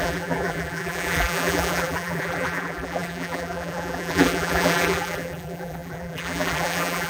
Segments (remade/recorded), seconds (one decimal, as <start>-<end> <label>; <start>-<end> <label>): 0.0-7.1 remade